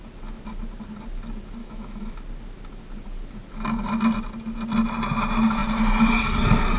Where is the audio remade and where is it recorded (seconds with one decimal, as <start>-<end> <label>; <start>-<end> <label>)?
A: 0.0-1.6 recorded; 1.6-2.1 remade; 2.1-6.8 recorded